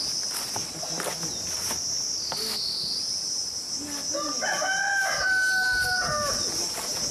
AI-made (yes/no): no